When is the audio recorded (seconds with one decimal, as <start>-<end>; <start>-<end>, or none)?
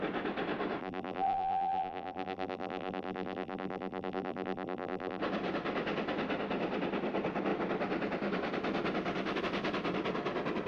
0.0-0.8; 5.2-10.7